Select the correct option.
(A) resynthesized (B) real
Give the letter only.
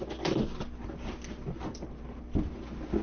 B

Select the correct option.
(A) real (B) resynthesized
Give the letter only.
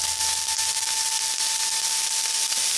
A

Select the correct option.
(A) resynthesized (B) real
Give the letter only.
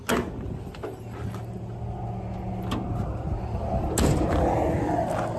B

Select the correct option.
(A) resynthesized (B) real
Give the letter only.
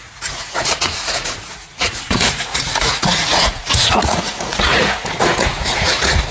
A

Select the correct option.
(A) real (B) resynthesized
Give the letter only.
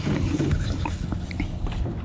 A